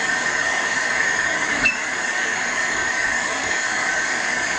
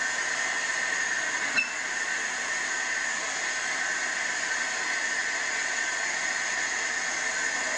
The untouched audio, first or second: second